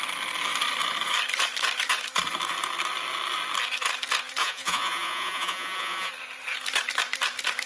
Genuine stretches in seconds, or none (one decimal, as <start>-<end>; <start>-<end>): 0.0-4.4; 6.1-7.7